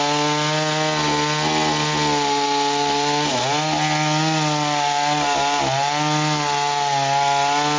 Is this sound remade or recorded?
recorded